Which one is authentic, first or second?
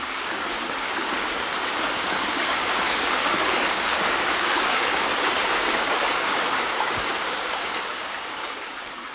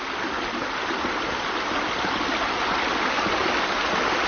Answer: second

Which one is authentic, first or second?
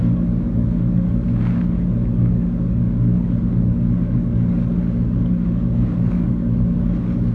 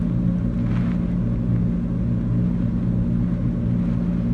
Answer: second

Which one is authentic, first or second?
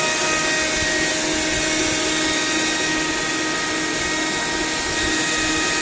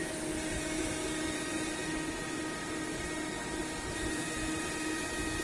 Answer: first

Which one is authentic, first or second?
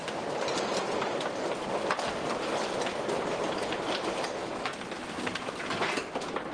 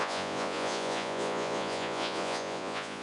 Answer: first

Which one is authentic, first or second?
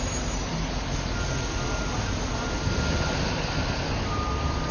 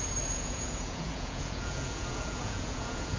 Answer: first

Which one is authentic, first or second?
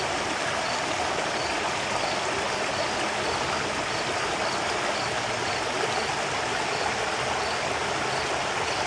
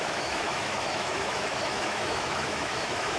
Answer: first